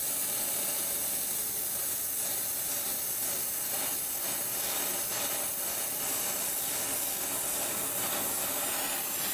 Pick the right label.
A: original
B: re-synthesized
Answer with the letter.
A